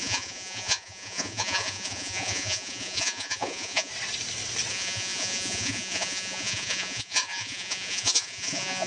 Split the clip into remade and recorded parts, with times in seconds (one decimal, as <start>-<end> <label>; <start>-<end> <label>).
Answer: 0.0-3.9 remade; 3.9-4.7 recorded; 4.7-8.9 remade